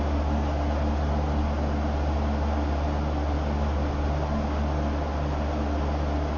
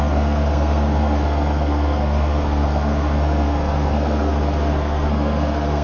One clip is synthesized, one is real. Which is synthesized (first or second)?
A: second